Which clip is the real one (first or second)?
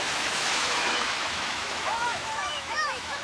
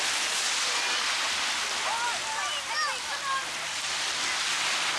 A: second